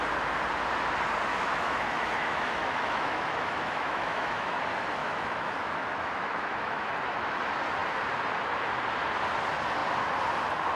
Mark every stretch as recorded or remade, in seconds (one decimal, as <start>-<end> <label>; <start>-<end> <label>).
0.0-1.3 recorded; 1.3-4.6 remade; 4.6-5.0 recorded; 5.0-6.9 remade; 6.9-10.8 recorded